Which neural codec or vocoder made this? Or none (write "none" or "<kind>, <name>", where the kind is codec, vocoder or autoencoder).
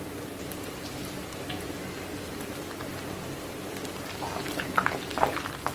none